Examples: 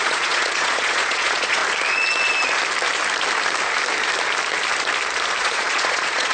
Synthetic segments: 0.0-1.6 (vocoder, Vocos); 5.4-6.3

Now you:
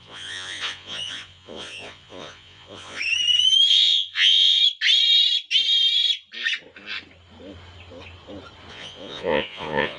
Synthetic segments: 0.0-3.0 (vocoder, Vocos); 3.7-4.6; 8.7-10.0